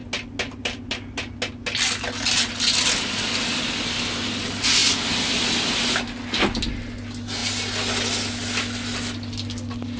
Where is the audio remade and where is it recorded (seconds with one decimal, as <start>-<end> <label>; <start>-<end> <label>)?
0.0-10.0 recorded